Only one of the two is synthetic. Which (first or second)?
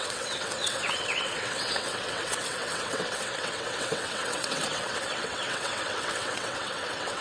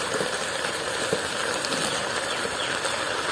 first